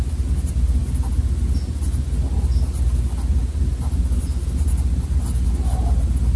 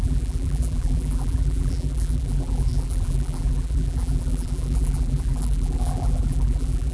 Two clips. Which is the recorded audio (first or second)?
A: first